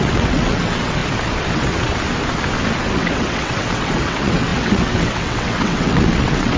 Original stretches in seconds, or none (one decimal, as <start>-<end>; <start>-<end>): 1.0-1.5; 1.9-2.8